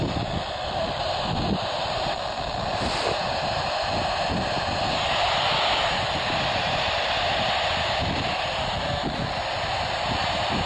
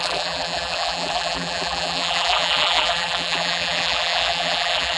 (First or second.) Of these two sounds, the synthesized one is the second